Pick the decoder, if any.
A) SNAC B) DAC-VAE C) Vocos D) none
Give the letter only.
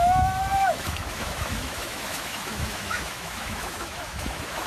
B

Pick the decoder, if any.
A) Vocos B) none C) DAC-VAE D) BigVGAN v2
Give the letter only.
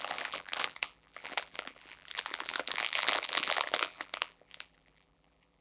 D